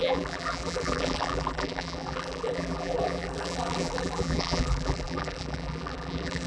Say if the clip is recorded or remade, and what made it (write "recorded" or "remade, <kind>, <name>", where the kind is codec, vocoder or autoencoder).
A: remade, vocoder, BigVGAN v2